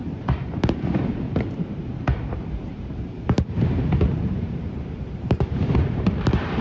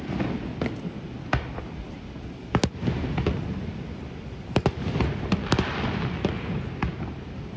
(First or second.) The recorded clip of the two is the second